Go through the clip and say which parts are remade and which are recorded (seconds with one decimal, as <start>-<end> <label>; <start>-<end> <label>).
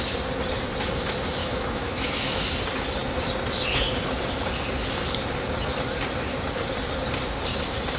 0.0-1.4 recorded; 1.4-2.4 remade; 2.4-8.0 recorded